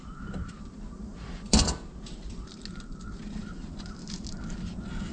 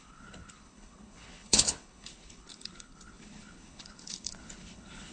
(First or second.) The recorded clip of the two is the first